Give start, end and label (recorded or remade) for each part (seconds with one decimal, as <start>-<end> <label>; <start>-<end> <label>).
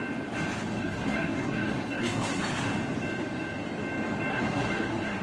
0.0-0.7 recorded; 0.7-2.4 remade; 2.4-4.3 recorded; 4.3-5.2 remade